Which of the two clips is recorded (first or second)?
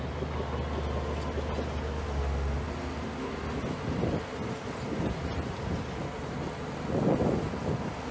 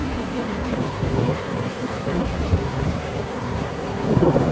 first